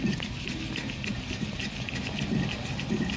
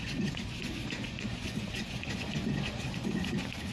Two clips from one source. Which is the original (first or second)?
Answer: first